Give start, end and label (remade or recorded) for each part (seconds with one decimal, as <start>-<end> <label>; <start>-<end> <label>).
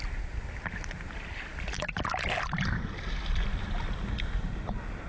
0.0-5.1 recorded